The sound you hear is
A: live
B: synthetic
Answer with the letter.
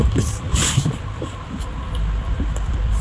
A